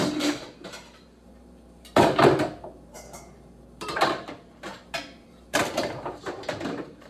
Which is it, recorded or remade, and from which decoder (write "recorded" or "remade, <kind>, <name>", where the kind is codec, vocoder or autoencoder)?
remade, vocoder, BigVGAN v2